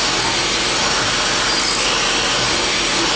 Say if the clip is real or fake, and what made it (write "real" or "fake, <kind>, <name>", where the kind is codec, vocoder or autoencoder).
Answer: real